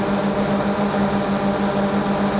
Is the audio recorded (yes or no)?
yes